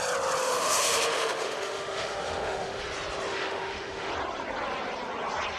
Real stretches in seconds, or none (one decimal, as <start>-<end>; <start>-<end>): 0.0-0.4; 2.8-3.3; 4.1-5.6